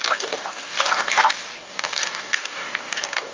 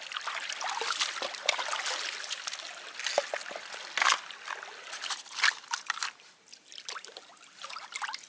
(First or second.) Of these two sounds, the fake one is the first